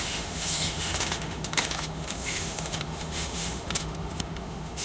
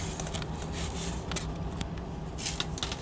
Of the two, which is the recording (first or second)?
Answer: second